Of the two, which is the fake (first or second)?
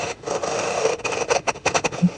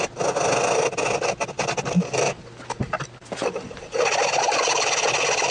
first